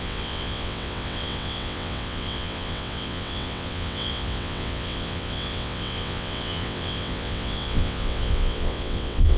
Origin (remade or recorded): remade